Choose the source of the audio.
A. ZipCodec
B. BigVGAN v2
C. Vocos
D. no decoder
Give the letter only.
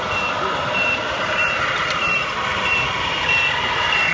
B